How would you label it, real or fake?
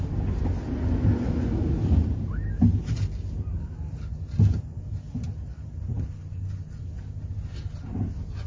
real